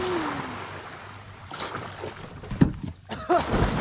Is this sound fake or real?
real